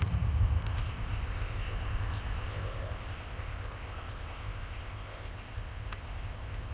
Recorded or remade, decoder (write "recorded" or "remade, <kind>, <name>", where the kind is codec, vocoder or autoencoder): remade, codec, ZipCodec